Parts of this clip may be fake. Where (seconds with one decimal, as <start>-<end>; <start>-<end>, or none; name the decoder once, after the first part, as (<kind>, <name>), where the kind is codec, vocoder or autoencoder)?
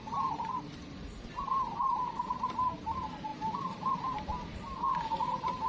0.0-4.3 (vocoder, BigVGAN v2); 5.2-5.7